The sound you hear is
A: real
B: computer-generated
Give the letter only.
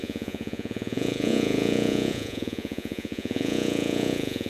B